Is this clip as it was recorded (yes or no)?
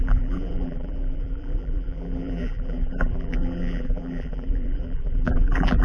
no